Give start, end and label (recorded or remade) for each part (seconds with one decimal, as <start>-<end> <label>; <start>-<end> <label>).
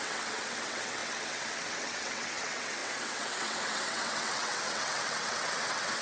0.0-6.0 remade